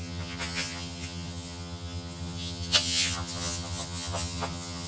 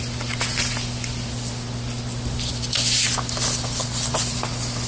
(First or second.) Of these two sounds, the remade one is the first